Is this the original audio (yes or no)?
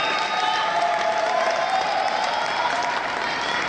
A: yes